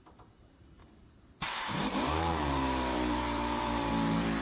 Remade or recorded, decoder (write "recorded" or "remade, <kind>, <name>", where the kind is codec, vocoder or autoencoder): remade, vocoder, BigVGAN v2